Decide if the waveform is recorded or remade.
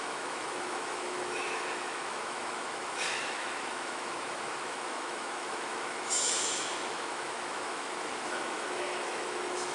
remade